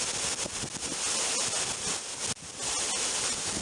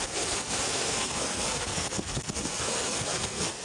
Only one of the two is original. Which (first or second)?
first